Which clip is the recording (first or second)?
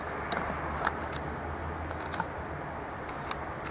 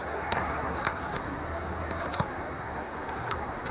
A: first